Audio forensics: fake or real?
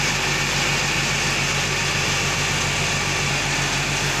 real